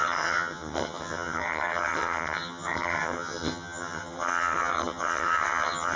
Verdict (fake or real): fake